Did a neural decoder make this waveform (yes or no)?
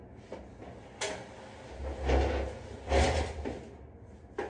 no